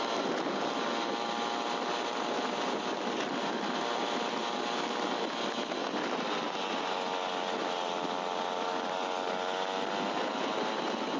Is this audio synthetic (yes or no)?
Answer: no